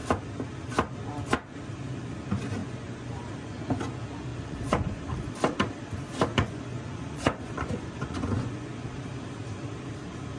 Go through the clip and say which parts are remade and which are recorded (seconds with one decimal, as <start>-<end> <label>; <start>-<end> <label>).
0.0-2.6 recorded; 2.6-3.8 remade; 3.8-4.3 recorded; 4.3-5.3 remade; 5.3-6.3 recorded; 6.3-8.7 remade; 8.7-10.4 recorded